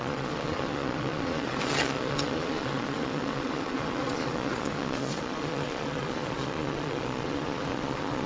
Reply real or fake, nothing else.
fake